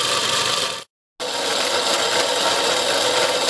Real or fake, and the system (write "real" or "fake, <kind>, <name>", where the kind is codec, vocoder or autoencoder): real